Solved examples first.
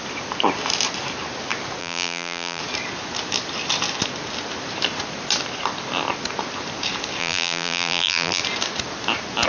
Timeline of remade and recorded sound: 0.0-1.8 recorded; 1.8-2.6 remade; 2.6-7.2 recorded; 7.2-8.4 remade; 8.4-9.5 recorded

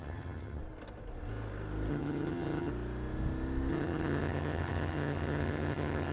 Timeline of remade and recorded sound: 0.0-0.6 remade; 0.6-1.9 recorded; 1.9-2.7 remade; 2.7-3.7 recorded; 3.7-6.1 remade

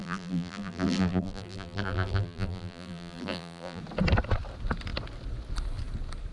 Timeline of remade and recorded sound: 0.0-3.8 remade; 3.8-6.3 recorded

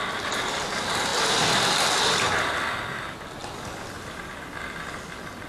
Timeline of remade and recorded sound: 0.0-5.5 recorded